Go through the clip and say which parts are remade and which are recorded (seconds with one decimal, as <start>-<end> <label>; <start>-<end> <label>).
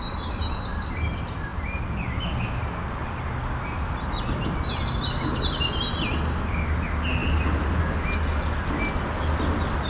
0.0-9.9 recorded